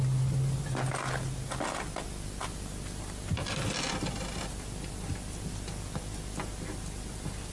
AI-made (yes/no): no